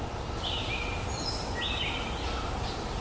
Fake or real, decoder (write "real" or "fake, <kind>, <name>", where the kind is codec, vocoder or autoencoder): real